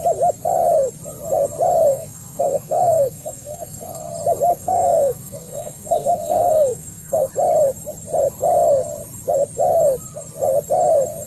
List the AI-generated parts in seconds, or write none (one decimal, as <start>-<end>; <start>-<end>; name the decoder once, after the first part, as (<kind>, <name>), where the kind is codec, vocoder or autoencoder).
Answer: 1.9-4.0 (codec, SNAC); 4.5-7.3